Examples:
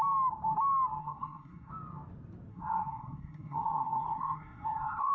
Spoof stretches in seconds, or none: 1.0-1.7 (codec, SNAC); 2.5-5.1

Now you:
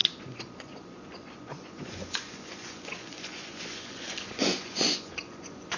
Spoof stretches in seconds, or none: 0.0-5.8 (vocoder, Vocos)

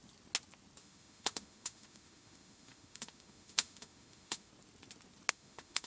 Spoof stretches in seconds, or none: 0.8-4.5 (autoencoder, DAC-VAE); 5.3-5.9

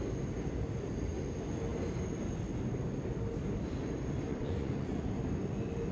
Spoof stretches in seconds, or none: 4.3-5.1 (vocoder, Vocos)

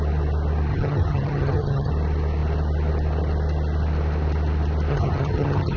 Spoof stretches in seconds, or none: 0.7-1.9 (vocoder, HiFi-GAN); 4.9-5.8

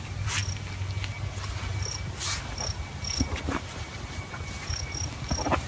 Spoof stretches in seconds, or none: 0.0-0.4 (vocoder, BigVGAN v2); 3.8-5.7

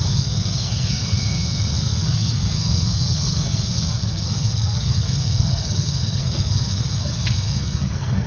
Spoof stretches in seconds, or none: 0.0-8.3 (codec, SNAC)

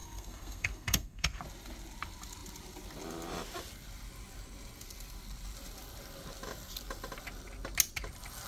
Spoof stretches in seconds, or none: 0.0-1.4 (codec, SNAC)